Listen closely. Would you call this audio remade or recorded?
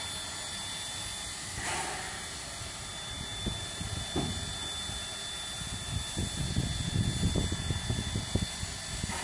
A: recorded